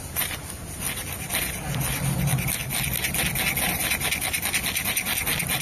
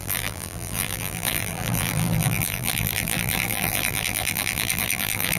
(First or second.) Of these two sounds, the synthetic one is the second